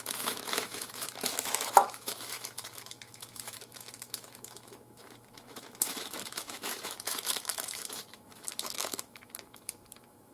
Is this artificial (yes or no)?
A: yes